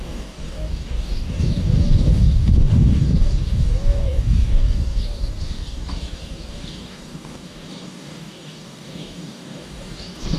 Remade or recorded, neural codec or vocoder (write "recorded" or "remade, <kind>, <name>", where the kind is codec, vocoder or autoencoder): remade, codec, DAC